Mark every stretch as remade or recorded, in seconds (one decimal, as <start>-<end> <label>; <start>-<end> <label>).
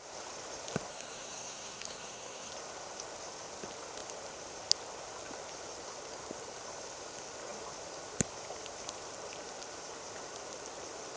0.0-0.9 recorded; 0.9-2.5 remade; 2.5-11.2 recorded